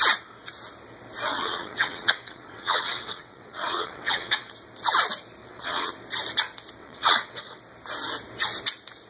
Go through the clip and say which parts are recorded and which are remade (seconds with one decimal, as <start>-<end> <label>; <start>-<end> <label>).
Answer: 0.0-1.3 recorded; 1.3-4.5 remade; 4.5-5.4 recorded; 5.4-5.9 remade; 5.9-6.8 recorded; 6.8-7.6 remade; 7.6-9.1 recorded